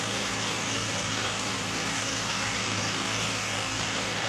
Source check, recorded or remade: remade